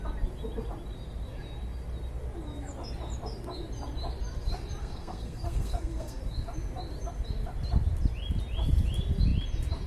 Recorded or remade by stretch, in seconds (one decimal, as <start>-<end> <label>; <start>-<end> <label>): 0.0-4.8 recorded; 4.8-6.2 remade; 6.2-9.9 recorded